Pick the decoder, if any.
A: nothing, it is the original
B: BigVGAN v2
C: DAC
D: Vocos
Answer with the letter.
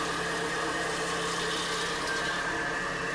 A